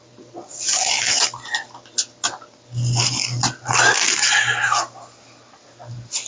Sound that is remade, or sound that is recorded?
recorded